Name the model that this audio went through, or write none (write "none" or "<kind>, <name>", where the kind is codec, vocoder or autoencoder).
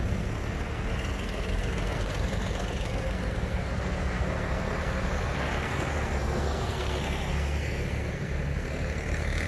codec, SNAC